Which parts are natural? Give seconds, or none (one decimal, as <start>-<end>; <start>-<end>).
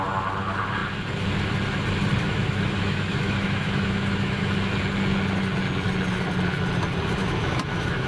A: 0.0-2.2; 4.5-7.2